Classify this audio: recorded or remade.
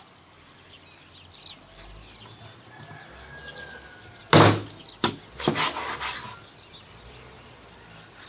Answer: recorded